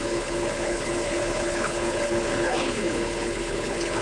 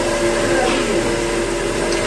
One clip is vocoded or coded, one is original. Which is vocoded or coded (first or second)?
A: first